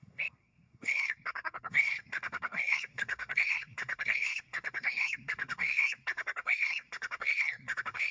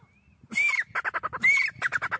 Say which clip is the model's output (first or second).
first